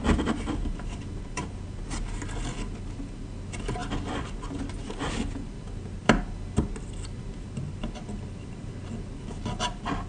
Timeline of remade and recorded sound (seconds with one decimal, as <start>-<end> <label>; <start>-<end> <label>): 0.0-10.1 recorded